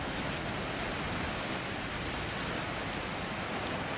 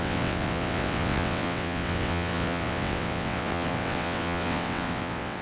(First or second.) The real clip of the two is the first